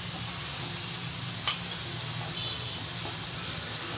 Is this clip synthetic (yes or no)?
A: no